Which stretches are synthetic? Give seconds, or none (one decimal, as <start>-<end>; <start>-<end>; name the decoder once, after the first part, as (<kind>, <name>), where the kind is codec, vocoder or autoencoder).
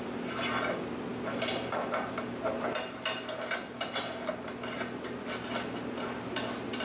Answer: none